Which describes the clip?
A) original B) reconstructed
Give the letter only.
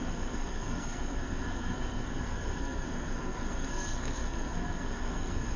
B